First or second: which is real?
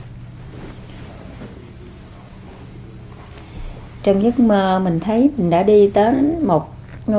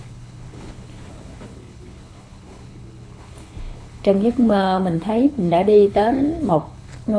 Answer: first